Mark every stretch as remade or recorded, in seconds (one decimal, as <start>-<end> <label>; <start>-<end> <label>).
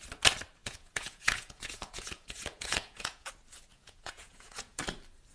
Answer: 0.0-0.6 recorded; 0.6-3.3 remade; 3.3-3.7 recorded; 3.7-4.8 remade; 4.8-5.3 recorded